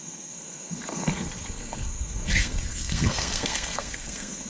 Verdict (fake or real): fake